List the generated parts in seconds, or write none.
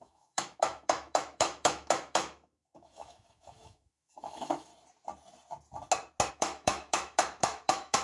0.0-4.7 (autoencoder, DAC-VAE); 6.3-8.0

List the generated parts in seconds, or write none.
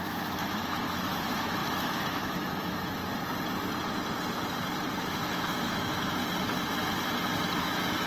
0.0-3.0 (autoencoder, DAC-VAE); 5.1-6.2; 7.6-8.1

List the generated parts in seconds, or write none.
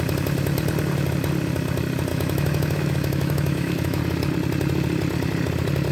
2.1-4.0 (autoencoder, DAC-VAE)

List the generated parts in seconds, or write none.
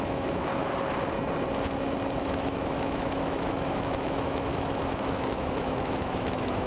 0.0-0.5 (autoencoder, DAC-VAE); 2.2-6.7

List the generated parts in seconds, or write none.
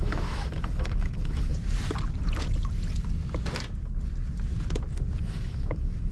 0.0-1.5 (autoencoder, DAC-VAE); 5.2-6.1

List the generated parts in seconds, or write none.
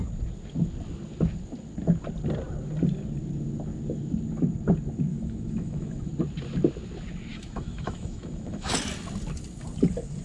5.1-6.1 (autoencoder, DAC-VAE); 7.3-8.7